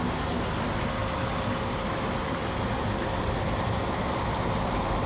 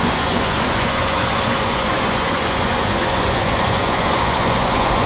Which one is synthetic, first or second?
second